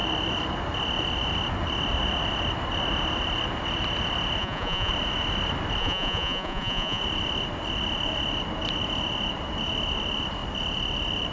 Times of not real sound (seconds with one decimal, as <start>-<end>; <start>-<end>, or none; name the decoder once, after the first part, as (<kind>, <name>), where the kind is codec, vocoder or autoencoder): 4.4-4.9 (vocoder, Vocos); 5.8-7.0